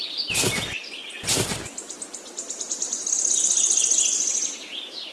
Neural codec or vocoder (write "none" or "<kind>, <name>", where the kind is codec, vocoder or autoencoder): none